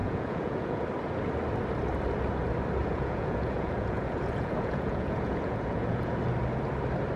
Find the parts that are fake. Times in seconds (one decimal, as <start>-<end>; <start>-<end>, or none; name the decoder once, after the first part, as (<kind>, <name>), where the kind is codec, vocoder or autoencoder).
0.0-0.8 (vocoder, Vocos); 2.8-6.1

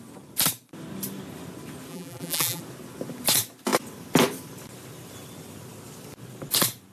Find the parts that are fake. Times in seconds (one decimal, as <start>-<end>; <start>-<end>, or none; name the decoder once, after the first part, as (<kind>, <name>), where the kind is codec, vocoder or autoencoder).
1.9-2.6 (vocoder, BigVGAN v2)

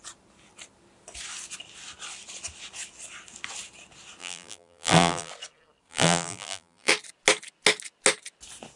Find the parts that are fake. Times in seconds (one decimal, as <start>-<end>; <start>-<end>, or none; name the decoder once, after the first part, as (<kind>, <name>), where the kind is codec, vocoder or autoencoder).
4.2-5.3 (vocoder, BigVGAN v2); 5.9-6.9

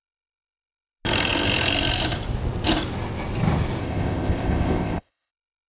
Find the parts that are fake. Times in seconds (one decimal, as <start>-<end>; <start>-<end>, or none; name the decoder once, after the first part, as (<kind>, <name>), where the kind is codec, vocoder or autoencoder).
3.8-5.3 (codec, ZipCodec)

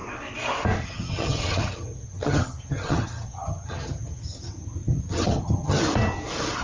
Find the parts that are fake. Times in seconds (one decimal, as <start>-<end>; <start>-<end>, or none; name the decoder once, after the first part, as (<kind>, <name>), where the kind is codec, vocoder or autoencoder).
0.8-5.8 (vocoder, HiFi-GAN)